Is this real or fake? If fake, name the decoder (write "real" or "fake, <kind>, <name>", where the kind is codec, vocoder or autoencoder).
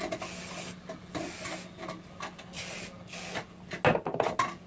real